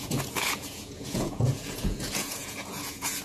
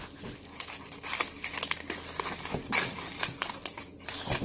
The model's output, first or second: first